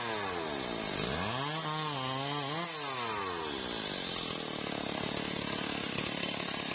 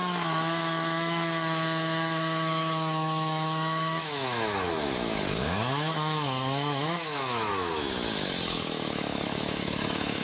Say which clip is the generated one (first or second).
second